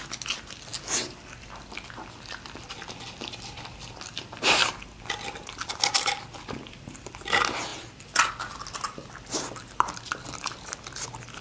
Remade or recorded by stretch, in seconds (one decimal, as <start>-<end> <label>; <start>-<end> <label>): 0.0-11.4 recorded